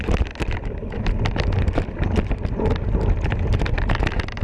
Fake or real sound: real